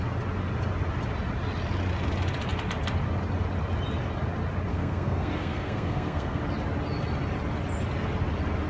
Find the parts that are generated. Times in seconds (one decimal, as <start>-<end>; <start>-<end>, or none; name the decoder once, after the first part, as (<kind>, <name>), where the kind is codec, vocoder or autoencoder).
4.7-6.4 (codec, SNAC)